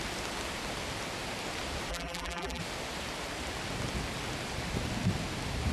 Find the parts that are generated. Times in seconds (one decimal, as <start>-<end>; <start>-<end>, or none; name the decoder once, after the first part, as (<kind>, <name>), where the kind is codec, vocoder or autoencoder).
1.9-2.6 (vocoder, BigVGAN v2)